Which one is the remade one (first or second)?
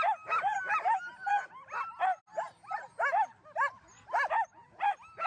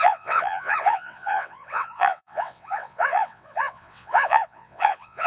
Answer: second